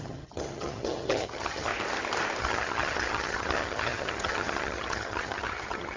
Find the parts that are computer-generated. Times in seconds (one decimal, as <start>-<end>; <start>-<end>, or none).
0.0-1.7; 2.4-6.0